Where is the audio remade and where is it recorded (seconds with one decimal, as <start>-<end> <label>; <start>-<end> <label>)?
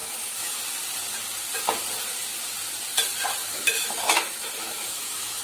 0.0-0.6 remade; 0.6-3.4 recorded; 3.4-5.4 remade